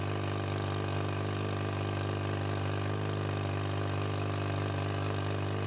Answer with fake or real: real